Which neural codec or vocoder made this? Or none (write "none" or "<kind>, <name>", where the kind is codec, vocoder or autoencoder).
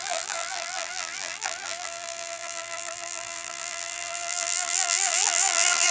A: vocoder, BigVGAN v2